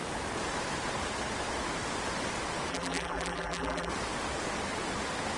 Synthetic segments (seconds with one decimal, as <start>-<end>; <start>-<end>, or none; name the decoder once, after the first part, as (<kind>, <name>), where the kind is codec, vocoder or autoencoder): 2.7-3.9 (vocoder, BigVGAN v2)